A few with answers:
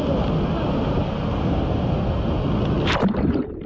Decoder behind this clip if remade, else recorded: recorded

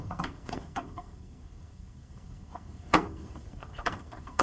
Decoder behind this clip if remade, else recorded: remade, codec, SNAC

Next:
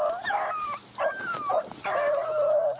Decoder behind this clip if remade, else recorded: recorded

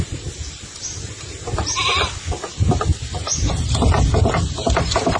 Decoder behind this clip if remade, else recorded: recorded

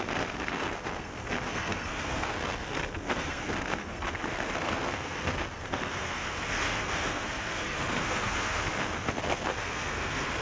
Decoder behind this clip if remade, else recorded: remade, codec, SNAC